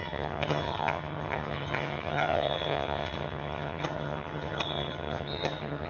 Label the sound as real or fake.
fake